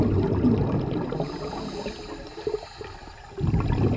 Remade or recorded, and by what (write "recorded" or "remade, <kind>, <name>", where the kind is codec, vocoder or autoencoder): recorded